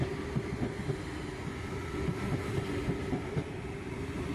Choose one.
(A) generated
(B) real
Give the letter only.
B